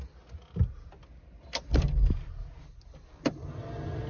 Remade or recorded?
recorded